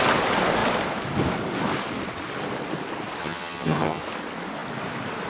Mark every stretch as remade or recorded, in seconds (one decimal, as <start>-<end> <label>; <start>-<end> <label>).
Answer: 0.0-3.2 recorded; 3.2-4.0 remade; 4.0-5.3 recorded